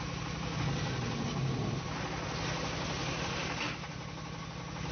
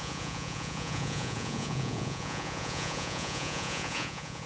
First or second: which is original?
first